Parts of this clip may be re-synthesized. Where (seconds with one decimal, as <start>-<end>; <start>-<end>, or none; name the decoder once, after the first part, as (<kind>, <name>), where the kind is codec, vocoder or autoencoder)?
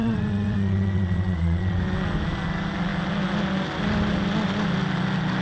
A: 0.0-1.8 (vocoder, WaveNeXt)